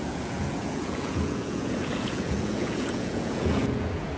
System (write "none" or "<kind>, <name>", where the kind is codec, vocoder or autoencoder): vocoder, Vocos